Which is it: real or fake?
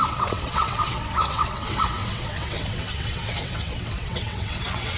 fake